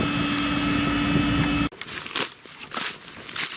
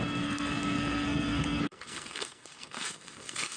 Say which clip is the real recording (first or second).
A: first